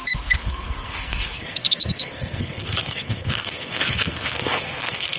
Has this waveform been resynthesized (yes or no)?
yes